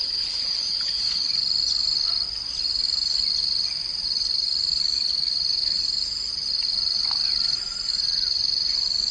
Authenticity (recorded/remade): recorded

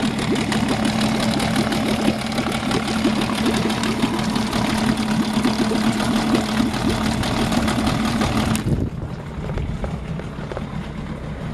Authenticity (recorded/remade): recorded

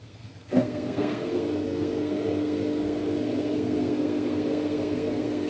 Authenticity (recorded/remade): remade